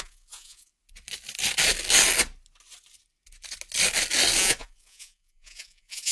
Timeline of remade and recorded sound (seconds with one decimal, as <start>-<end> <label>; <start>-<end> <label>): 0.0-0.7 remade; 0.7-4.4 recorded; 4.4-6.1 remade